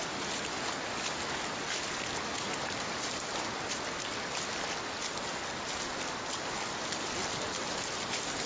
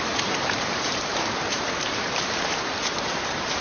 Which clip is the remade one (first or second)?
second